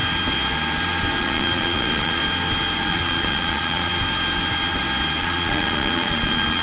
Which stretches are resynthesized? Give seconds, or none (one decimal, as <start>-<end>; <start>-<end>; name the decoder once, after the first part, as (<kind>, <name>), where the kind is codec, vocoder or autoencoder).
1.2-2.2 (vocoder, Vocos); 2.9-3.9; 5.2-6.6

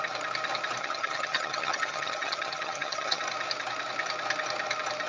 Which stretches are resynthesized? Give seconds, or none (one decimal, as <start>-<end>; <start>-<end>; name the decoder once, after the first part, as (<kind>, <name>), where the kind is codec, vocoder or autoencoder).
0.8-3.2 (vocoder, HiFi-GAN)

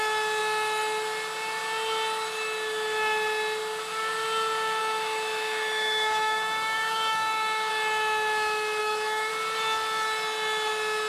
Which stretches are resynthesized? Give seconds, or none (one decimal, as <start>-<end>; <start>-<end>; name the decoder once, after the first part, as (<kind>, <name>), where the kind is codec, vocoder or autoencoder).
4.8-7.7 (autoencoder, DAC-VAE); 8.8-9.3

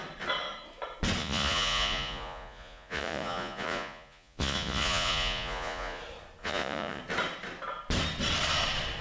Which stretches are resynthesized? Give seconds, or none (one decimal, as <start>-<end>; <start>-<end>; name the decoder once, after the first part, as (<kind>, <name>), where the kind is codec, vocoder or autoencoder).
1.2-6.0 (vocoder, Vocos); 6.4-7.0